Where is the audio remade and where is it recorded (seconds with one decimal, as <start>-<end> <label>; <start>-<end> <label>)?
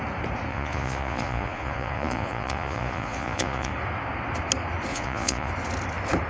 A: 0.0-0.5 recorded; 0.5-3.7 remade; 3.7-4.9 recorded; 4.9-5.5 remade; 5.5-6.3 recorded